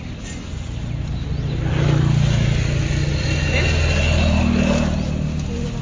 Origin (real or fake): real